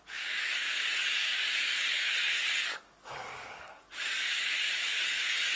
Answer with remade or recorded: remade